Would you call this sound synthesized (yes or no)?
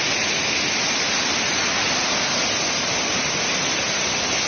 no